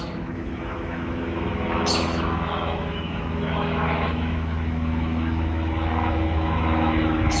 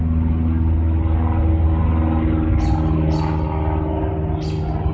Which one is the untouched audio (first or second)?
second